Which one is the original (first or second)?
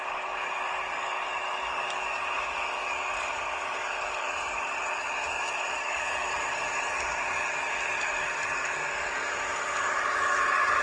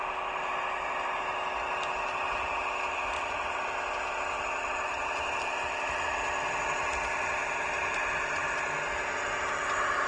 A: second